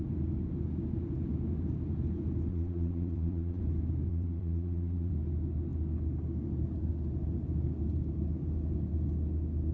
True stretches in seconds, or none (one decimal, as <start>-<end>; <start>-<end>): 0.0-2.5; 3.6-4.1; 5.1-9.7